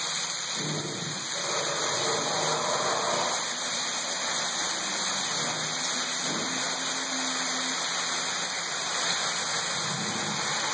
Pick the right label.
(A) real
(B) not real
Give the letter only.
A